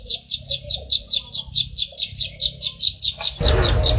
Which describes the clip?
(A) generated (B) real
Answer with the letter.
B